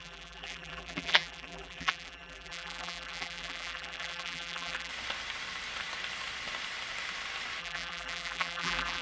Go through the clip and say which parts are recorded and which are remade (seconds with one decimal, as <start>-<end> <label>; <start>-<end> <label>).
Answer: 0.0-4.9 remade; 4.9-7.6 recorded; 7.6-9.0 remade